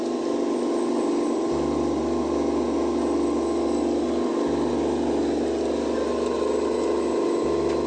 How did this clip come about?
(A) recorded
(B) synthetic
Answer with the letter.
A